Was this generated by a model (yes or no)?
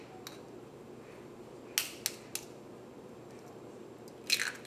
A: no